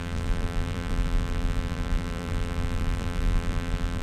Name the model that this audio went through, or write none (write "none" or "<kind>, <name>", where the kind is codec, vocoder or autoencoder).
vocoder, BigVGAN v2